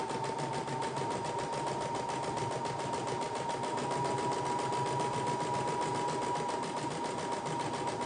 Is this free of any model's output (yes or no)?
yes